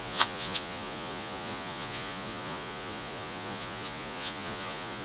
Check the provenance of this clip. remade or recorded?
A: remade